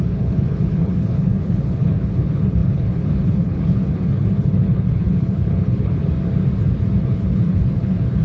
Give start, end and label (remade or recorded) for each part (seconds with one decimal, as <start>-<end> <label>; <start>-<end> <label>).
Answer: 0.0-6.0 remade; 6.0-7.0 recorded; 7.0-8.2 remade